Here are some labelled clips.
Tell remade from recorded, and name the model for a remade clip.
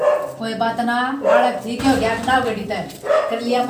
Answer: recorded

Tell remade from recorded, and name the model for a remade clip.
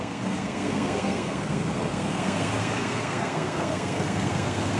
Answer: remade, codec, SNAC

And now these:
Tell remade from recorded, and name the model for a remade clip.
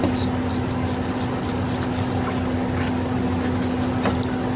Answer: recorded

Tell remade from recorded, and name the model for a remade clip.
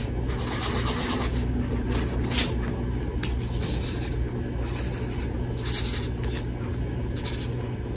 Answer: recorded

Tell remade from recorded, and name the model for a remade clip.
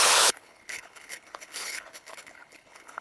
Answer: remade, codec, HILCodec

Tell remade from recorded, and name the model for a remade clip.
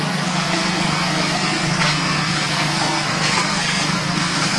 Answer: remade, codec, SNAC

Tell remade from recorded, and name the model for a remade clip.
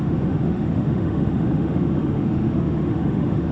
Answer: remade, autoencoder, DAC-VAE